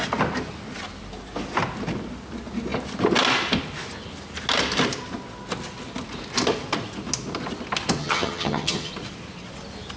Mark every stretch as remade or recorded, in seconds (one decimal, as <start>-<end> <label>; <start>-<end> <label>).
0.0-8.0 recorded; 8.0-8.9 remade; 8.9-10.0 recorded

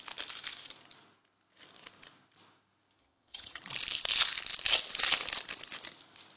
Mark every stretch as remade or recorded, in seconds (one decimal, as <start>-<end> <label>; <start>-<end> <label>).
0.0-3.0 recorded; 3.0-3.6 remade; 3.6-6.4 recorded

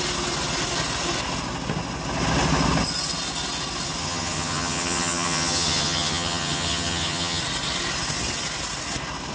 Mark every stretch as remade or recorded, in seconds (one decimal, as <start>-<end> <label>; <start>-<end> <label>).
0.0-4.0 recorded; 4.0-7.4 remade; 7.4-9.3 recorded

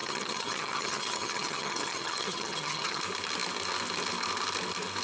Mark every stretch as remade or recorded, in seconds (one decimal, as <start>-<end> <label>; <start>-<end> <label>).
0.0-3.0 remade; 3.0-5.0 recorded

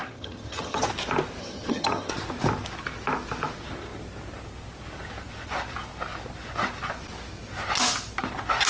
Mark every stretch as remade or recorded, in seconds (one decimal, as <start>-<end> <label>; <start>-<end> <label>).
0.0-0.8 remade; 0.8-1.4 recorded; 1.4-2.1 remade; 2.1-8.7 recorded

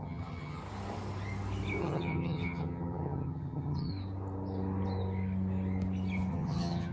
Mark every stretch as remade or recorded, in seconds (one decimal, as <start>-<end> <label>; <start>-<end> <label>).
0.0-0.6 remade; 0.6-1.8 recorded; 1.8-3.9 remade; 3.9-6.3 recorded; 6.3-6.9 remade

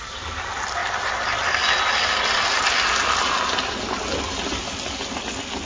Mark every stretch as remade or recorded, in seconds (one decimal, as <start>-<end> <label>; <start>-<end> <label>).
0.0-5.7 recorded